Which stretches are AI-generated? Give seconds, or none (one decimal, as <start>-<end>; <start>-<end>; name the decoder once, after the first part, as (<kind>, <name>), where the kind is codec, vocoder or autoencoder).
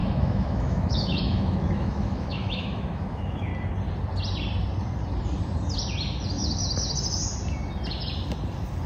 0.0-3.5 (autoencoder, DAC-VAE)